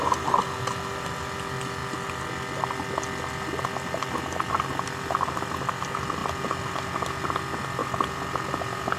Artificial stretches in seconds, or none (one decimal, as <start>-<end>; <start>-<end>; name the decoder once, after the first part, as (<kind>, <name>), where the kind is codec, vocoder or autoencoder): none